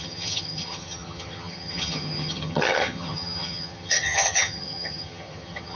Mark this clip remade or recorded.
remade